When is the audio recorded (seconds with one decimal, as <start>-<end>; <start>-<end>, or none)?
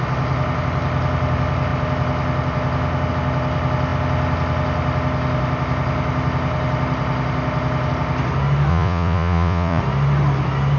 0.0-8.7; 9.8-10.8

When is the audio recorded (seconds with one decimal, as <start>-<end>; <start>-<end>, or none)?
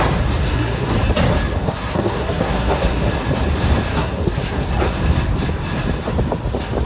0.0-0.4; 0.9-1.6; 3.1-3.9; 4.7-6.9